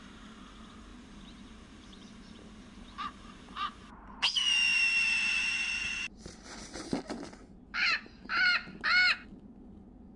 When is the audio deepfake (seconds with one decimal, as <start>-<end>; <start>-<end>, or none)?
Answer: 0.9-3.9